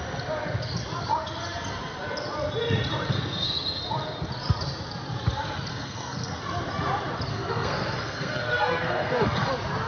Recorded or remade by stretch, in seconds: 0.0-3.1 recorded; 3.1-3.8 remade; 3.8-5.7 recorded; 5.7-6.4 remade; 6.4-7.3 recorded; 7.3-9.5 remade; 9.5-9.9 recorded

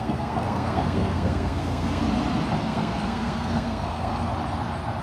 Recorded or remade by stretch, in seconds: 0.0-2.0 remade; 2.0-2.6 recorded; 2.6-4.3 remade; 4.3-5.0 recorded

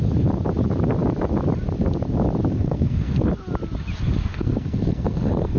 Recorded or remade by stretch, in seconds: 0.0-2.5 recorded; 2.5-3.3 remade; 3.3-4.3 recorded; 4.3-5.6 remade

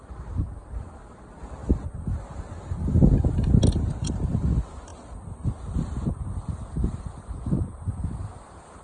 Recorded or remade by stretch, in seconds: 0.0-8.8 recorded

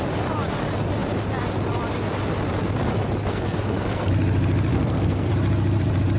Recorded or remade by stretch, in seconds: 0.0-3.3 recorded; 3.3-4.1 remade; 4.1-4.7 recorded; 4.7-5.3 remade; 5.3-6.2 recorded

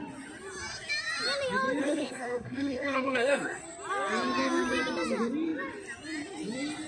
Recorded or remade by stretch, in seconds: 0.0-1.8 recorded; 1.8-3.6 remade; 3.6-6.9 recorded